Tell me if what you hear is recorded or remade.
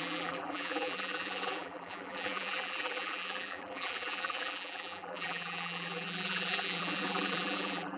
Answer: remade